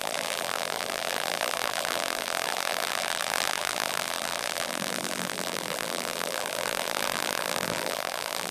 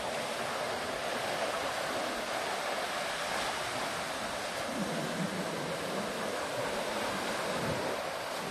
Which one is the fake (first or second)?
first